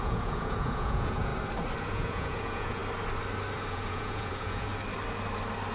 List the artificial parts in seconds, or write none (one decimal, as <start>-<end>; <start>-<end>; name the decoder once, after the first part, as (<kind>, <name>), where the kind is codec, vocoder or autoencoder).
0.0-1.3 (vocoder, Vocos); 1.8-2.8; 3.7-4.7